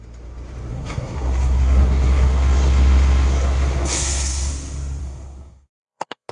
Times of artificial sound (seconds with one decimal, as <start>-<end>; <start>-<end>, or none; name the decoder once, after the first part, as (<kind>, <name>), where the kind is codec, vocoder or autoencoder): 0.7-4.5 (codec, SNAC); 5.0-6.3